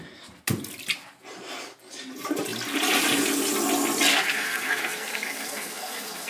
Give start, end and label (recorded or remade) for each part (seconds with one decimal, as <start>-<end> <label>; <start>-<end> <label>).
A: 0.0-4.1 recorded; 4.1-6.3 remade